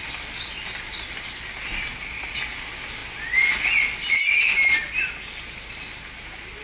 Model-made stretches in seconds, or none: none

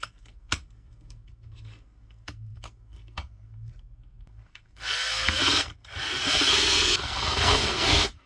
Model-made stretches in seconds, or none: 0.0-8.3

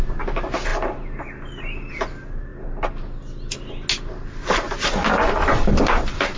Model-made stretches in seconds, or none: none

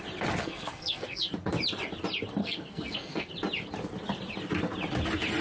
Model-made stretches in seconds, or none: 0.4-1.3; 2.4-3.3

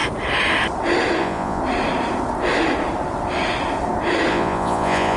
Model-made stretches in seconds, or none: 1.2-1.6; 4.3-5.2

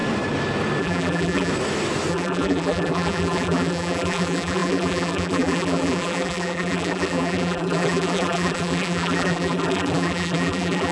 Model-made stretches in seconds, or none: 0.8-1.5; 2.1-10.9

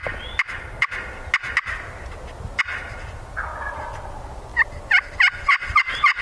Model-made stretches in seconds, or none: none